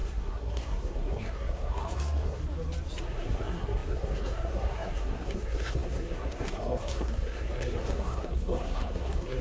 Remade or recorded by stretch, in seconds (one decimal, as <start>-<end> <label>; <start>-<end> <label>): 0.0-2.4 remade; 2.4-3.0 recorded; 3.0-9.4 remade